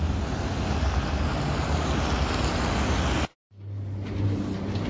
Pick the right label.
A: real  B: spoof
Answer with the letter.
A